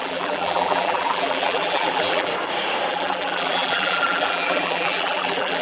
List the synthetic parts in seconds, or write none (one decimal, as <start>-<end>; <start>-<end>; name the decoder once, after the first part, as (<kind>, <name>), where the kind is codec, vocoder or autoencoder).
0.0-2.3 (vocoder, BigVGAN v2); 2.9-5.6